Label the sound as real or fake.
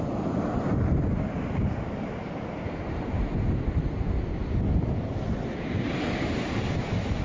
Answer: real